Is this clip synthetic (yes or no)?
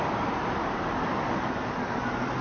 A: no